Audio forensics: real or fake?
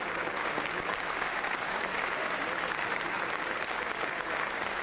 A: fake